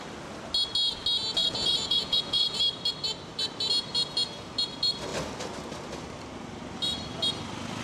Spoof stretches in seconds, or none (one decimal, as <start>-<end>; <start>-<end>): 1.4-2.6